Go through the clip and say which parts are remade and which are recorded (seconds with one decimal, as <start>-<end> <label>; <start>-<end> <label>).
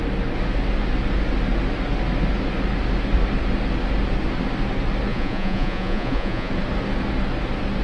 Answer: 0.0-5.1 recorded; 5.1-6.5 remade; 6.5-7.8 recorded